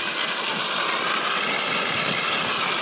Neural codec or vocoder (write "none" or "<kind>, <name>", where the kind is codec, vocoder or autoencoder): none